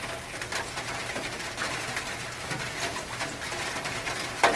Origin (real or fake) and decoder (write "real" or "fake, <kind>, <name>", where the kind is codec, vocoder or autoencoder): real